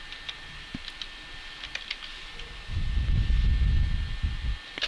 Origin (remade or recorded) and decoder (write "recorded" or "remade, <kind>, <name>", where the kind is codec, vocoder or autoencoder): recorded